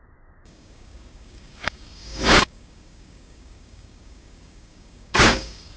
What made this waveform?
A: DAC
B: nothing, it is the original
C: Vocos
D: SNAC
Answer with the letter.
A